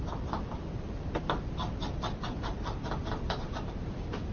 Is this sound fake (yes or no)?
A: no